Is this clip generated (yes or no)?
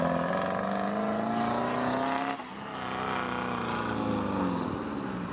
no